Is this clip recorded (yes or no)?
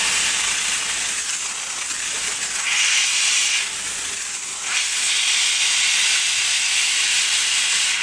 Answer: yes